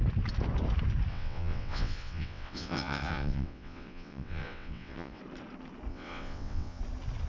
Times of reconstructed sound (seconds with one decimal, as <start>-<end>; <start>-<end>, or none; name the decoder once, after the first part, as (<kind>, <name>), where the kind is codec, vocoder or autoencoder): 1.1-5.2 (vocoder, WaveNeXt); 5.9-6.8